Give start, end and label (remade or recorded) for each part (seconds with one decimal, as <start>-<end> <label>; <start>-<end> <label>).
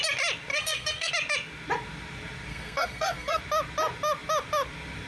0.0-0.5 recorded; 0.5-1.1 remade; 1.1-2.5 recorded; 2.5-3.4 remade; 3.4-5.1 recorded